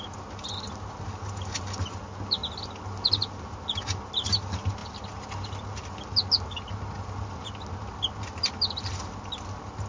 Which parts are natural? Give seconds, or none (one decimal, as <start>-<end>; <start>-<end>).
0.0-9.9